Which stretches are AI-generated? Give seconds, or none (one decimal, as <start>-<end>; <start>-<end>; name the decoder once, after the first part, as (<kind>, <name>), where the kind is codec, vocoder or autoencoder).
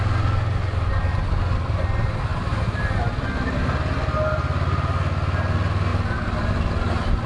none